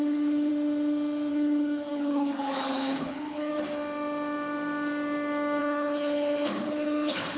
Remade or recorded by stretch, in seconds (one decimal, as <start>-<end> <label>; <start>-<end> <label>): 0.0-0.5 remade; 0.5-1.3 recorded; 1.3-3.5 remade; 3.5-5.6 recorded; 5.6-7.4 remade